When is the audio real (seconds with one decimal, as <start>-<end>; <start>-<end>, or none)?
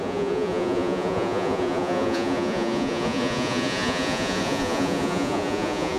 none